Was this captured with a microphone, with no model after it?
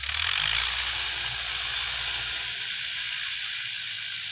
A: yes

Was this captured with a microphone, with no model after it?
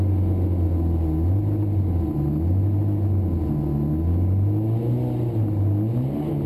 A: yes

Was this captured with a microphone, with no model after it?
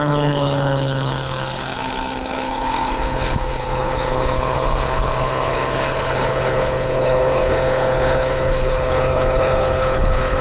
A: no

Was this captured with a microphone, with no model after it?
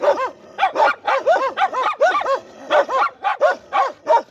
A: yes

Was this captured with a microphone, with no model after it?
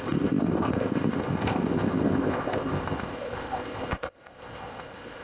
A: no